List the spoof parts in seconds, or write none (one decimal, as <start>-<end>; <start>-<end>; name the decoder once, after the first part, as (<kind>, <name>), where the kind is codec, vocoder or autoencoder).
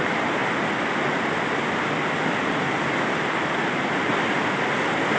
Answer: none